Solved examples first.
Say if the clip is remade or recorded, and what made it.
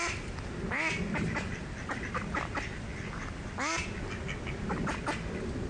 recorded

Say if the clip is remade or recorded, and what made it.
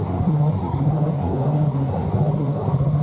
remade, codec, SNAC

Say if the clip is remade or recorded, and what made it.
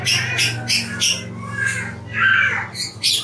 recorded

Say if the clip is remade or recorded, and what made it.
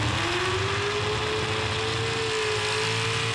recorded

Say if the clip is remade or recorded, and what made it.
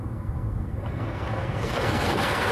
remade, codec, SNAC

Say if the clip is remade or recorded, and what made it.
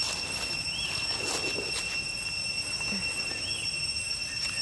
recorded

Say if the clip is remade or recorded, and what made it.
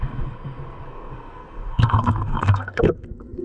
remade, codec, SNAC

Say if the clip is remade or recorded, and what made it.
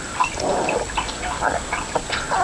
recorded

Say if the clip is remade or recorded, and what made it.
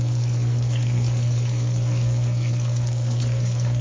remade, codec, SNAC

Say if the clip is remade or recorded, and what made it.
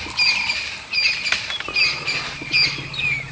recorded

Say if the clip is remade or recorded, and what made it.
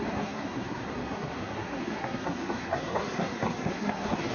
remade, codec, SNAC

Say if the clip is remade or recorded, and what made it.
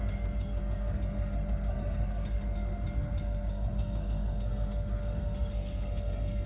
remade, codec, SNAC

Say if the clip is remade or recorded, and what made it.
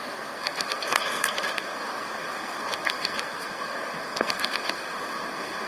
remade, codec, SNAC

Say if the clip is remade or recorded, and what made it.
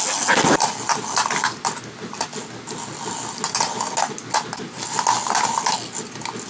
recorded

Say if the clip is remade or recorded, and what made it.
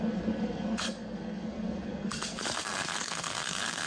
remade, codec, SNAC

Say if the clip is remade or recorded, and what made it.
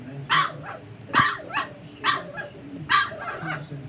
recorded